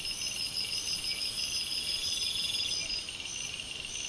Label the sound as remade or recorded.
recorded